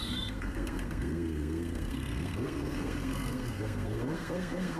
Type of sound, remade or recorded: remade